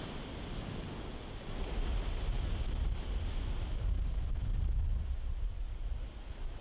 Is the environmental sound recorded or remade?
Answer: recorded